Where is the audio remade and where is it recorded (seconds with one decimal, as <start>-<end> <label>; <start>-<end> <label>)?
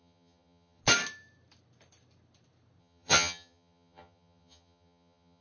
0.0-0.8 remade; 0.8-2.8 recorded; 2.8-5.4 remade